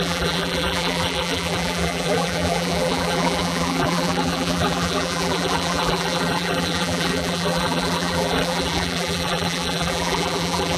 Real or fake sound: fake